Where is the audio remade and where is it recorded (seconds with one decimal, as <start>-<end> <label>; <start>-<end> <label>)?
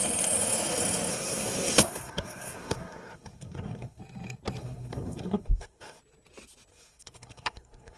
0.0-1.1 recorded; 1.1-4.0 remade; 4.0-4.6 recorded; 4.6-6.0 remade; 6.0-6.7 recorded; 6.7-8.0 remade